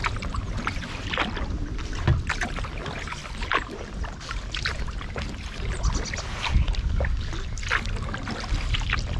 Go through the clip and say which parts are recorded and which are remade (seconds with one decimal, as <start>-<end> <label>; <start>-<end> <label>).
0.0-9.2 recorded